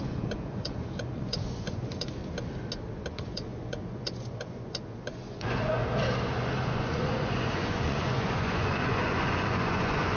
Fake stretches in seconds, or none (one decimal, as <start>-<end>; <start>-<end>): 0.0-2.2; 3.1-5.8; 6.3-10.2